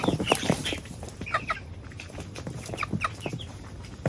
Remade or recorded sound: remade